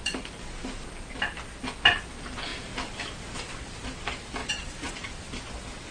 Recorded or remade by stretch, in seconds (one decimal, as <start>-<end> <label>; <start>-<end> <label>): 0.0-4.4 recorded; 4.4-5.1 remade; 5.1-5.9 recorded